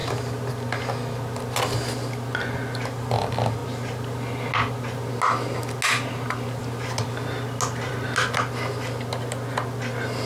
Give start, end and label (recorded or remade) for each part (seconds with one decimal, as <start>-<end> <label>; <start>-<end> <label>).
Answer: 0.0-10.3 recorded